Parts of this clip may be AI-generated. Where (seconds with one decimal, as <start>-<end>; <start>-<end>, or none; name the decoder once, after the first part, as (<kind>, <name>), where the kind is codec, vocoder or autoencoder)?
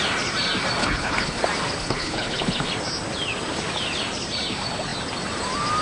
0.8-1.4 (codec, HILCodec); 1.8-2.7